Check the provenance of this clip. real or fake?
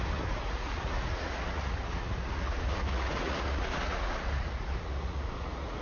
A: fake